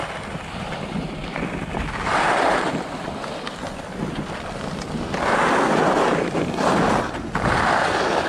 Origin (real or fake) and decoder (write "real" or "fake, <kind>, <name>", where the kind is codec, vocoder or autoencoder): real